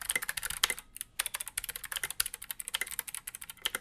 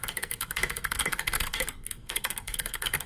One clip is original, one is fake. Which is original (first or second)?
first